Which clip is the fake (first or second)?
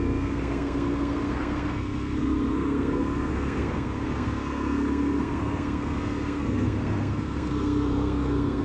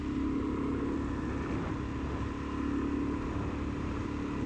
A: first